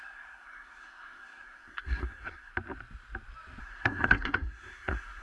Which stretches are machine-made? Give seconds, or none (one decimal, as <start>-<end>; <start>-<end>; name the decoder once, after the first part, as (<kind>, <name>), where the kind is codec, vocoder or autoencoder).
0.0-2.5 (codec, SNAC); 3.6-5.2